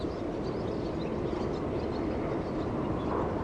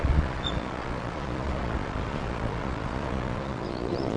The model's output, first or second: second